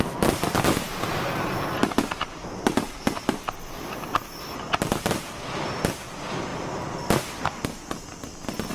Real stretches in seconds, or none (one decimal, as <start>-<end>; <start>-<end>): 0.0-8.7